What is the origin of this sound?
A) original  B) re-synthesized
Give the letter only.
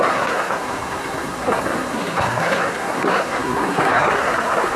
B